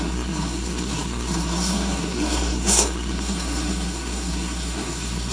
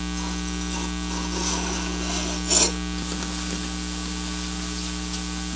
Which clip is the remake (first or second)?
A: first